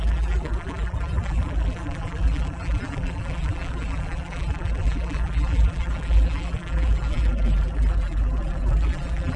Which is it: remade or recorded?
remade